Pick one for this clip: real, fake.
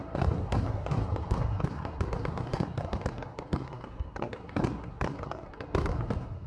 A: fake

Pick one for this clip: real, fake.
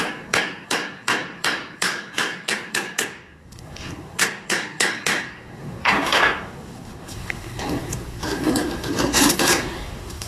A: fake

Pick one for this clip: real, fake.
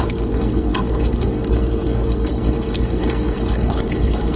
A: fake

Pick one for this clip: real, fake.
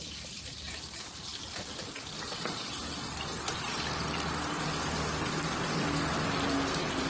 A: real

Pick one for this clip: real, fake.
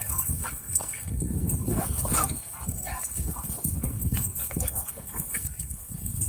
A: fake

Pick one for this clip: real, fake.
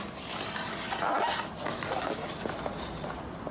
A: real